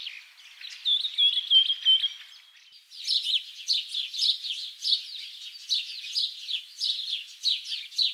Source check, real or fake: real